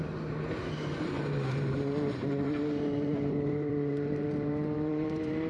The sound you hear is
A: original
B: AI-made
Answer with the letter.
B